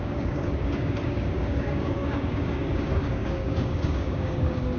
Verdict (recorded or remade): remade